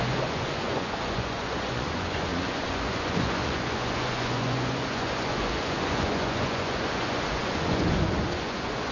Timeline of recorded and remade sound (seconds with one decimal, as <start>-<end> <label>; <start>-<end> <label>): 0.0-8.9 remade